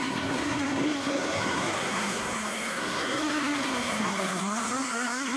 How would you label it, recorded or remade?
remade